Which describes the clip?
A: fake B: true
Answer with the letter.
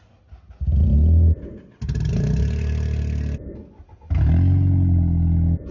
B